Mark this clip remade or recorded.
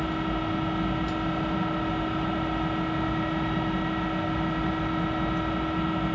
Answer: recorded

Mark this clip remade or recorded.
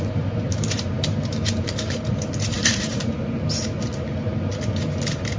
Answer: remade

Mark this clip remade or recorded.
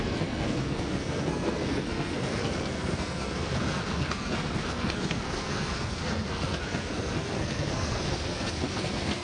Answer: remade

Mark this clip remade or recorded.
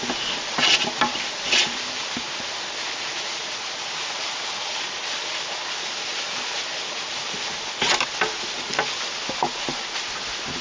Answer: recorded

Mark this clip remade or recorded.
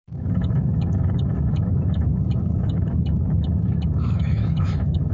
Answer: remade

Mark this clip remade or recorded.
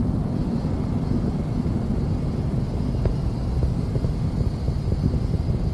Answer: recorded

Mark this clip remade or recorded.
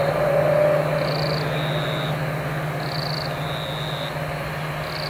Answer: recorded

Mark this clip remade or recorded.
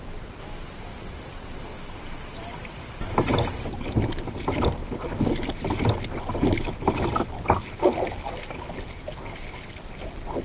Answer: recorded